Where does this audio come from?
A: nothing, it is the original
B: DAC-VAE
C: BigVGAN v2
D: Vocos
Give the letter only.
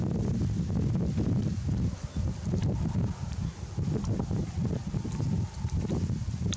A